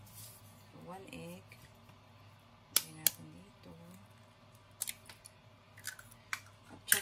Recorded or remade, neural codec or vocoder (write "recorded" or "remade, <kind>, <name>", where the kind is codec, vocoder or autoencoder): recorded